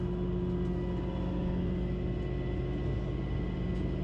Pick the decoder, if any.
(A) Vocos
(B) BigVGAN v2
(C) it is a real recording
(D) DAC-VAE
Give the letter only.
C